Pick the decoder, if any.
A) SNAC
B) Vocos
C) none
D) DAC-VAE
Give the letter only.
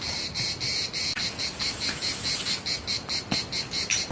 C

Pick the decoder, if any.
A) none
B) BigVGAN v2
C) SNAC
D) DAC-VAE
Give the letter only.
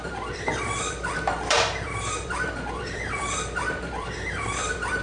B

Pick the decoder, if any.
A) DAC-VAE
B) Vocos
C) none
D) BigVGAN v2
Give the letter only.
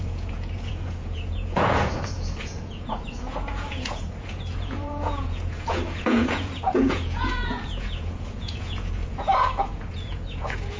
B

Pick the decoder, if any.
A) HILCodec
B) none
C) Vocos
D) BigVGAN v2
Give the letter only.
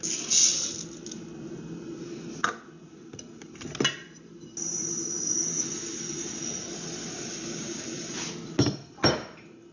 B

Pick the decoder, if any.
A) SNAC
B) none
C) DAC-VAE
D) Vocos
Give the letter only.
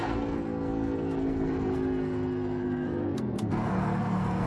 A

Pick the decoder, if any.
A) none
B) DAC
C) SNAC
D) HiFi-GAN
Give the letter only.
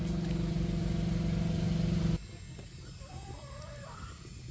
A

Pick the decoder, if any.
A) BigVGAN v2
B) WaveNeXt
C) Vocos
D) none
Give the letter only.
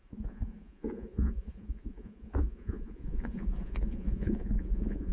C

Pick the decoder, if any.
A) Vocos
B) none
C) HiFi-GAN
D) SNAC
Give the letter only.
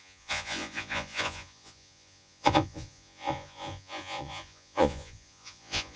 A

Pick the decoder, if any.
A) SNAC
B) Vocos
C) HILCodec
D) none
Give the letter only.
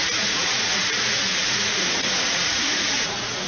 B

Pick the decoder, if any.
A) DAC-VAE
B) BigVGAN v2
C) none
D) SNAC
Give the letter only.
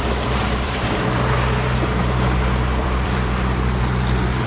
B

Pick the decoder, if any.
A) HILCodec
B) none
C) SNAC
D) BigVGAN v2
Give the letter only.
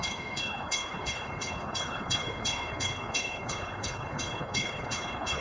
A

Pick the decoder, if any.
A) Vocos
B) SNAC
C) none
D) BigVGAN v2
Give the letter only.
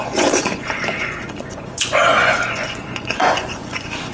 A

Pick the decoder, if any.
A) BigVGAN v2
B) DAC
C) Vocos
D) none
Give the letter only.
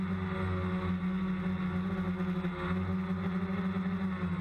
D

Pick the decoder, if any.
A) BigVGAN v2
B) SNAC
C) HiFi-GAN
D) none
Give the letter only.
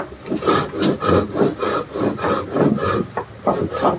D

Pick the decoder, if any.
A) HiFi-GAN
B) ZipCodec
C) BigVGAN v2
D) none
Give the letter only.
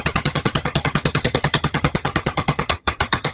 A